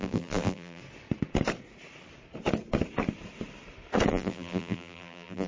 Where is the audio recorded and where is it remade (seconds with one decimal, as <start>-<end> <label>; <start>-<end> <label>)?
0.0-0.8 remade; 0.8-4.1 recorded; 4.1-5.5 remade